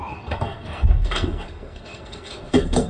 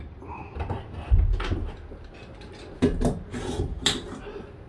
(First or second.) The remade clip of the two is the first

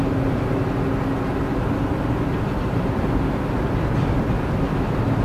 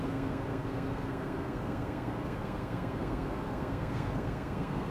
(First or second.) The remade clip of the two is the second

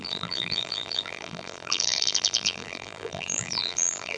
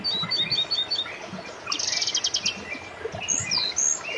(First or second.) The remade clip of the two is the first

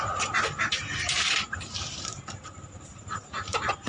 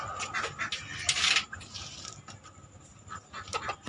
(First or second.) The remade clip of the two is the first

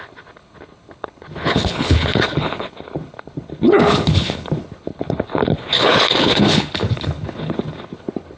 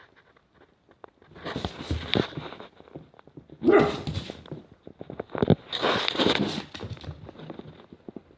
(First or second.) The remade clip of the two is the first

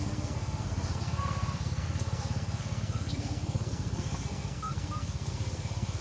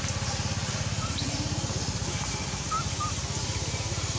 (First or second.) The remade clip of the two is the first